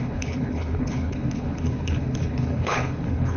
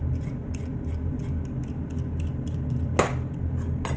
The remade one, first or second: first